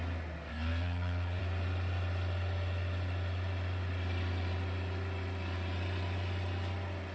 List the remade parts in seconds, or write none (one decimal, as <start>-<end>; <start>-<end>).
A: 0.5-1.4